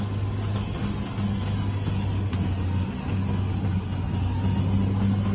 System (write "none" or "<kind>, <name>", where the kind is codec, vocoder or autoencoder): none